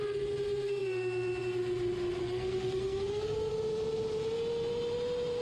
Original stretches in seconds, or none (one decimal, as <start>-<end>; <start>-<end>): 0.0-2.2; 3.5-5.4